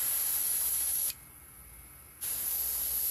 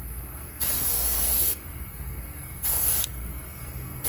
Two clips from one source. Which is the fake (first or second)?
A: second